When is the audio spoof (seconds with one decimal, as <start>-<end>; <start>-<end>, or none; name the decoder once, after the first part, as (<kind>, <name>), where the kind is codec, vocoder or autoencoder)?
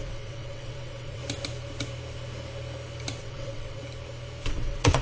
0.0-1.2 (vocoder, WaveNeXt); 3.2-3.8; 4.5-5.0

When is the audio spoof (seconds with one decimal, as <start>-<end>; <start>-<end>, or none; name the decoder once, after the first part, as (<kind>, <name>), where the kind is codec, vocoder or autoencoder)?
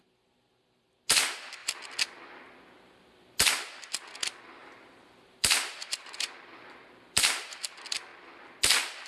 4.6-7.6 (vocoder, BigVGAN v2)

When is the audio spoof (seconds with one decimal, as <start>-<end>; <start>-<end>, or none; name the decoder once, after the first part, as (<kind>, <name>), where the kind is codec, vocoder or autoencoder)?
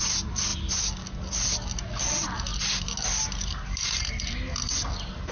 none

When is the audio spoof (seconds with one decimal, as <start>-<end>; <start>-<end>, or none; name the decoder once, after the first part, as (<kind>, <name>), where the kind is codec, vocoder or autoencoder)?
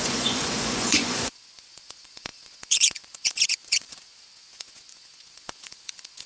0.0-6.3 (vocoder, Vocos)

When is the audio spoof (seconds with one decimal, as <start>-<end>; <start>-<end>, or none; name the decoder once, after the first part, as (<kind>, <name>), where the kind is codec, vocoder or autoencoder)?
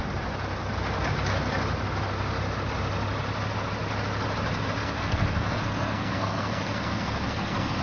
4.8-7.8 (codec, SNAC)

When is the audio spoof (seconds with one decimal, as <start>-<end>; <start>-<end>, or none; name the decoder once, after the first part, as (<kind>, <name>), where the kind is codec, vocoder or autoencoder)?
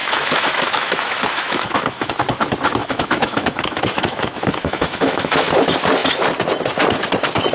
0.0-2.1 (autoencoder, DAC-VAE); 2.8-5.5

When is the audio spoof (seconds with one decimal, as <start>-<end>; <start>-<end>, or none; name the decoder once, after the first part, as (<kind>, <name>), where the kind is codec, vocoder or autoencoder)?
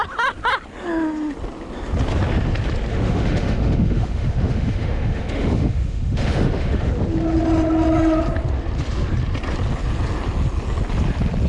2.9-6.9 (autoencoder, DAC-VAE)